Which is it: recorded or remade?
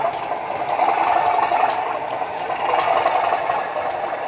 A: remade